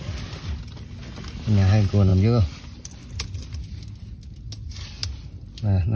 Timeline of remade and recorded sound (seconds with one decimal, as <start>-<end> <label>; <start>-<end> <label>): 0.0-6.0 recorded